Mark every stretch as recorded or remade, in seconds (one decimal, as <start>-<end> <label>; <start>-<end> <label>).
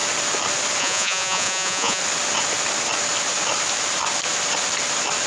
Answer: 0.0-0.8 recorded; 0.8-2.0 remade; 2.0-5.3 recorded